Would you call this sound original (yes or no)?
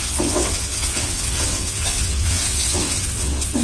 no